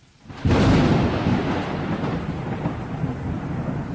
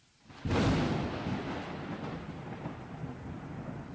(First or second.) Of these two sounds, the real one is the second